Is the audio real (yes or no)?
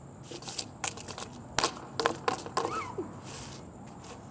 yes